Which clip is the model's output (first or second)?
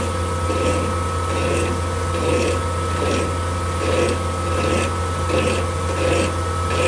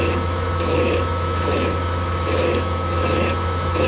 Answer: second